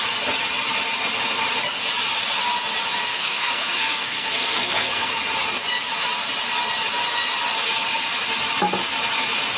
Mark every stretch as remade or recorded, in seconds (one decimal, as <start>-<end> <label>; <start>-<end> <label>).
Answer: 0.0-3.1 recorded; 3.1-5.1 remade; 5.1-9.6 recorded